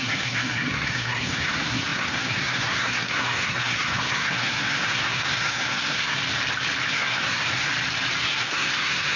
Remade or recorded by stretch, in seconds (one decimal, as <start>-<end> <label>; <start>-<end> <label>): 0.0-6.2 remade; 6.2-6.9 recorded; 6.9-7.7 remade; 7.7-8.2 recorded; 8.2-9.2 remade